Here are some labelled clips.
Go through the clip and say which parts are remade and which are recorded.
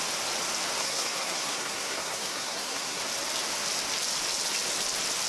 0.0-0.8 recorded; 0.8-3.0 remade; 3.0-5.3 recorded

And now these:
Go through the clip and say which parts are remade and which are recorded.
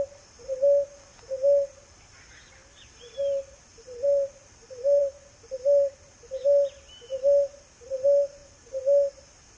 0.0-9.6 recorded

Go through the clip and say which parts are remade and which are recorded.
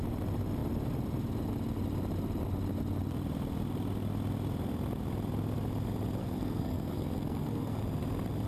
0.0-6.2 recorded; 6.2-7.8 remade; 7.8-8.5 recorded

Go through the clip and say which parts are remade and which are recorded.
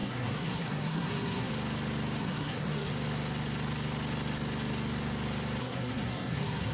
0.0-1.5 remade; 1.5-2.2 recorded; 2.2-2.9 remade; 2.9-5.6 recorded; 5.6-6.7 remade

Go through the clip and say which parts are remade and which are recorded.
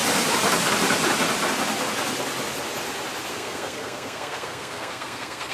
0.0-3.3 recorded; 3.3-5.5 remade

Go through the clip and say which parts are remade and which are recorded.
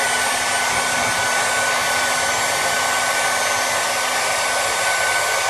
0.0-5.5 recorded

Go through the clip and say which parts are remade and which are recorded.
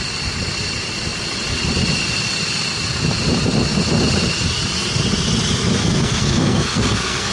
0.0-5.8 recorded; 5.8-7.3 remade